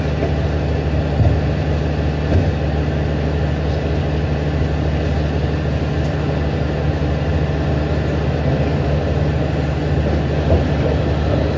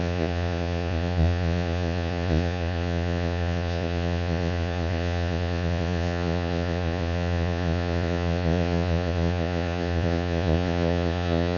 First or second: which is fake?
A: second